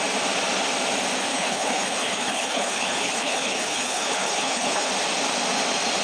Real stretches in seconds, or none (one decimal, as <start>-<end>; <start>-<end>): 0.0-1.3; 4.9-6.0